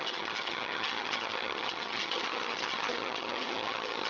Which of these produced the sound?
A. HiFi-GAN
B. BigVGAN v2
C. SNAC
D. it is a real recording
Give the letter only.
A